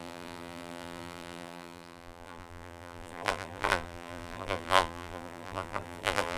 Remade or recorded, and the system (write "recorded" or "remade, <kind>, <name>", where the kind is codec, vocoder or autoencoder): remade, vocoder, BigVGAN v2